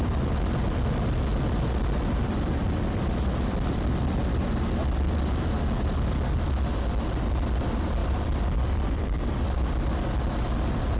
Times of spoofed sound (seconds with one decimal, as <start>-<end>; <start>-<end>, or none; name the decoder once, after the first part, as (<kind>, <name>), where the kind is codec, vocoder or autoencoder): 1.3-4.0 (vocoder, BigVGAN v2); 8.0-9.6